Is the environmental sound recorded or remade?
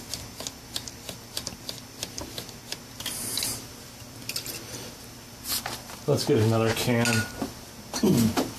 recorded